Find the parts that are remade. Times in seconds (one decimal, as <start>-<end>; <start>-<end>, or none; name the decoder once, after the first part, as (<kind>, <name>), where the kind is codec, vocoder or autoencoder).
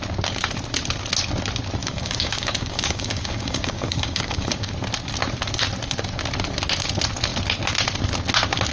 1.8-4.7 (codec, DAC)